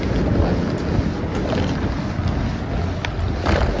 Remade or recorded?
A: recorded